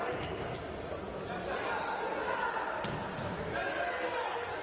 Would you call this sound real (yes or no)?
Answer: yes